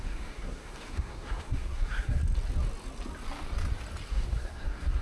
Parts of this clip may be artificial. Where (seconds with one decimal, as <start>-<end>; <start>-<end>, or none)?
0.0-2.2; 4.1-5.0

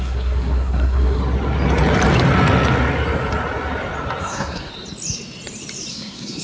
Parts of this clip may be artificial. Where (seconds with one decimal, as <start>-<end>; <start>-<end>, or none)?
0.0-1.2; 4.2-4.7; 5.9-6.4

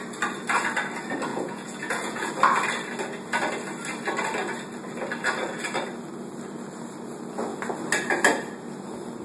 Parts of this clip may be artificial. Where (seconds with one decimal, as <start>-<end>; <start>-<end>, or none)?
1.3-2.3

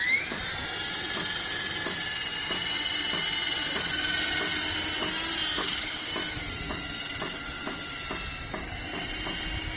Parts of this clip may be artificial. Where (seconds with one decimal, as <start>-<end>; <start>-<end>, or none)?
5.6-6.1

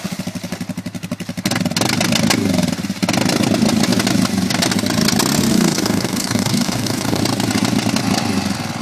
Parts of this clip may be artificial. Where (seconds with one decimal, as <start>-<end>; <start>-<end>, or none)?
5.5-7.2

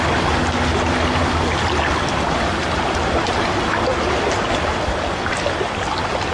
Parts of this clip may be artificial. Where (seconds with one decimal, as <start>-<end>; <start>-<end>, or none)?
none

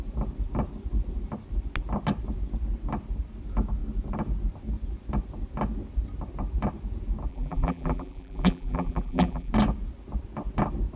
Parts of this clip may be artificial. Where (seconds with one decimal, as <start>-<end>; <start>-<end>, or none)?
7.3-9.5